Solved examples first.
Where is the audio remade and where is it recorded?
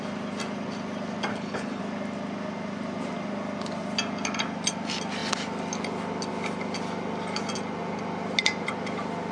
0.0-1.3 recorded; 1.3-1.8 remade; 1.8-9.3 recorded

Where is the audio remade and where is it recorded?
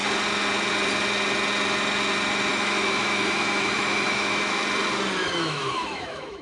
0.0-2.5 recorded; 2.5-4.6 remade; 4.6-5.2 recorded; 5.2-6.4 remade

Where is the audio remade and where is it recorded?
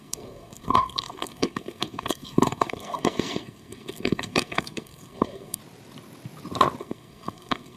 0.0-5.6 remade; 5.6-6.8 recorded; 6.8-7.8 remade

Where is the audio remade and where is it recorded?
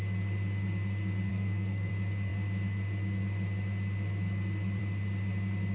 0.0-1.3 recorded; 1.3-1.9 remade; 1.9-5.7 recorded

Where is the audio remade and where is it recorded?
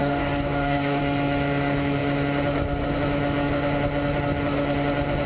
0.0-1.0 remade; 1.0-5.3 recorded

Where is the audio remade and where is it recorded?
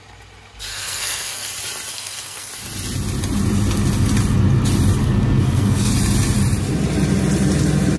0.0-0.7 recorded; 0.7-1.5 remade; 1.5-1.9 recorded; 1.9-2.5 remade; 2.5-5.0 recorded; 5.0-5.9 remade; 5.9-8.0 recorded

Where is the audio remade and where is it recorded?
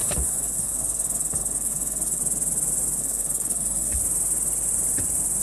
0.0-2.2 remade; 2.2-3.0 recorded; 3.0-4.0 remade; 4.0-5.4 recorded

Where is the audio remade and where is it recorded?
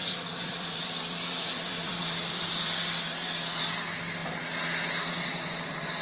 0.0-3.6 remade; 3.6-6.0 recorded